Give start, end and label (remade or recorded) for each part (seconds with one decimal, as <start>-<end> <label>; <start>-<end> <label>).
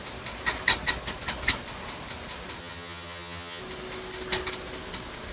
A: 0.0-2.6 recorded; 2.6-3.6 remade; 3.6-5.3 recorded